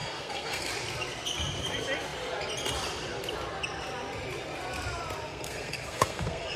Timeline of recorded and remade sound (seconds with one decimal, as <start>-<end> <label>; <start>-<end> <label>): 0.0-0.7 remade; 0.7-5.3 recorded; 5.3-6.6 remade